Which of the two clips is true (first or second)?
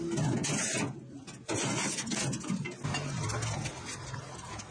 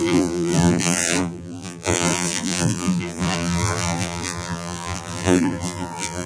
first